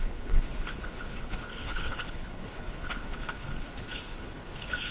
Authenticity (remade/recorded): remade